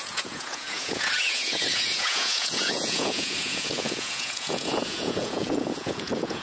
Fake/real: fake